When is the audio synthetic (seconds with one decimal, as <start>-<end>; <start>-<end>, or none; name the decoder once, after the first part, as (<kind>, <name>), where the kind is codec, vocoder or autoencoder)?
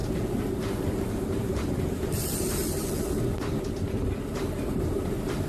0.0-2.9 (vocoder, BigVGAN v2); 4.3-5.1